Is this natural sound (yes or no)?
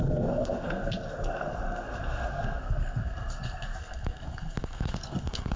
no